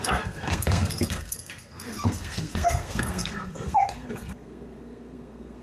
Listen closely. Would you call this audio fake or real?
fake